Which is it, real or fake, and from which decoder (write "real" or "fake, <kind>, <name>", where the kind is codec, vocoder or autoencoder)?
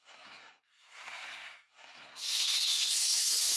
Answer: fake, codec, SNAC